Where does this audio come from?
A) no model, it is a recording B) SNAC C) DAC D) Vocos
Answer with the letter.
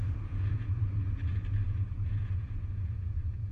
D